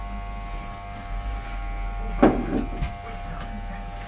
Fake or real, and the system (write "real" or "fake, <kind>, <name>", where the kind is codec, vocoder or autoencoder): real